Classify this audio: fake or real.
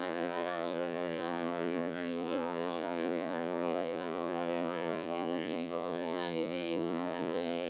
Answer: fake